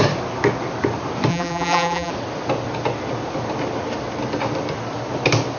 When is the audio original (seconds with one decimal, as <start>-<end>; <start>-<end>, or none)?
0.0-1.3; 2.1-5.6